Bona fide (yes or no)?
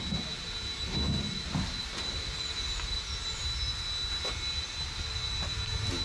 yes